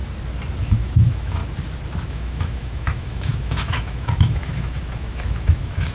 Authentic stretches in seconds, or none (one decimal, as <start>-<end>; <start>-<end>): 0.0-0.6; 1.4-2.1